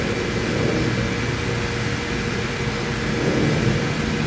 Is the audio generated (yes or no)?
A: no